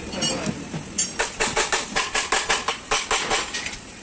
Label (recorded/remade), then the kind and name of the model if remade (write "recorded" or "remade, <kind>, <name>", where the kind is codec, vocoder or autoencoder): recorded